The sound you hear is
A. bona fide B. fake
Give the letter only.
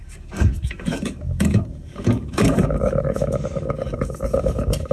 B